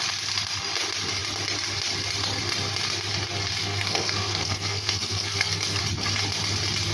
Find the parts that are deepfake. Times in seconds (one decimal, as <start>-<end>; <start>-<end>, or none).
3.6-5.8